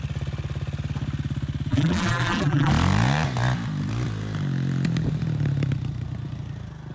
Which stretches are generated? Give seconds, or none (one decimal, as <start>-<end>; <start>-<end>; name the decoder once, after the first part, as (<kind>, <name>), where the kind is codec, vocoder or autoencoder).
1.7-2.7 (vocoder, BigVGAN v2)